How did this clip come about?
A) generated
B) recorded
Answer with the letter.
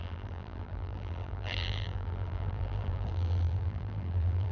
A